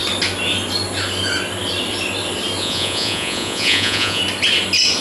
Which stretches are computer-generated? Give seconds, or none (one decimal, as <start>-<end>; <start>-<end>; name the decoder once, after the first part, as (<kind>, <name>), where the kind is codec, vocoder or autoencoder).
2.6-4.2 (vocoder, Vocos)